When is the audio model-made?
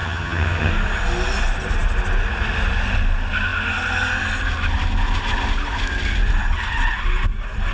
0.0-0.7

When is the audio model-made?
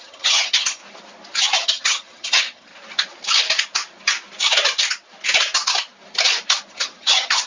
0.0-0.8; 1.4-2.7; 6.7-7.5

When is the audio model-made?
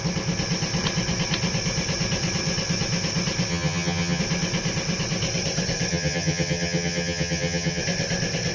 3.5-4.2; 5.9-7.8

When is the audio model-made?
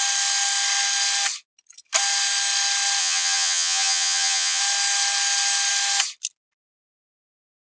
3.0-4.6